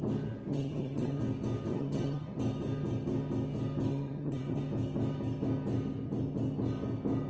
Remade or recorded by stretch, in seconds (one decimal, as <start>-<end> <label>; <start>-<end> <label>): 0.0-0.5 recorded; 0.5-1.2 remade; 1.2-1.7 recorded; 1.7-2.4 remade; 2.4-3.9 recorded; 3.9-4.6 remade; 4.6-7.3 recorded